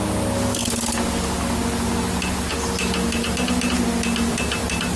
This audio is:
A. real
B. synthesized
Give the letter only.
A